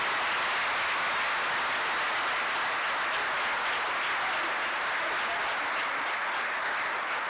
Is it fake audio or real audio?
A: real